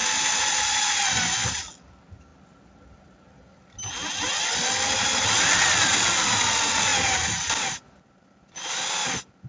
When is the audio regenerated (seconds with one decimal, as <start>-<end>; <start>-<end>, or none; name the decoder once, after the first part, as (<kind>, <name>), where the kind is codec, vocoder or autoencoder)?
none